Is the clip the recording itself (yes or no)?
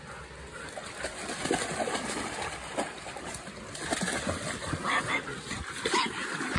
yes